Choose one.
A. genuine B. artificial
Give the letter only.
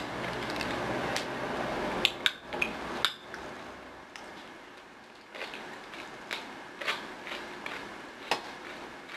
A